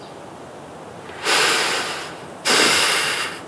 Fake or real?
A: real